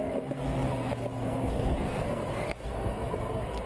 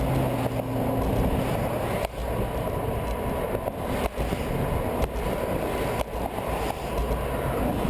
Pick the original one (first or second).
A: second